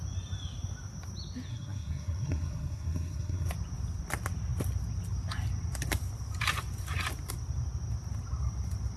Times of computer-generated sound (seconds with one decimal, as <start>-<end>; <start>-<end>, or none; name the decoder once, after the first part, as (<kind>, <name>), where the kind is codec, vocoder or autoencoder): 1.5-3.5 (codec, SNAC)